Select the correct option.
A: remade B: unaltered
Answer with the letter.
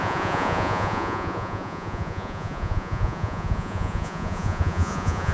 A